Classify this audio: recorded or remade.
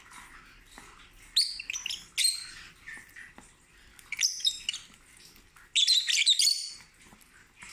recorded